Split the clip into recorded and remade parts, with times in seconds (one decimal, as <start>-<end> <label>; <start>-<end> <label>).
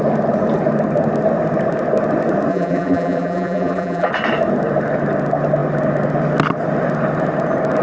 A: 0.0-2.5 recorded; 2.5-4.1 remade; 4.1-7.8 recorded